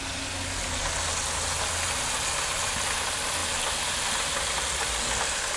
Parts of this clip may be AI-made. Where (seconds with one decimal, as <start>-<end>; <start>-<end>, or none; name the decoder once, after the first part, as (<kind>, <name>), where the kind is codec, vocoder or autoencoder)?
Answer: none